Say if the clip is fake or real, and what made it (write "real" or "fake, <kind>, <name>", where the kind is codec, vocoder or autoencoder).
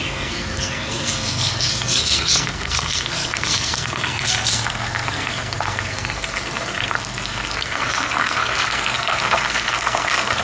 fake, codec, SNAC